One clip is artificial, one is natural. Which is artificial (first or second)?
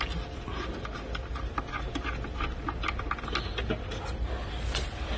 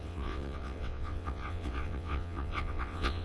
second